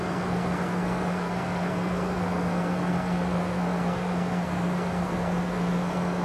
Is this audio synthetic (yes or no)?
yes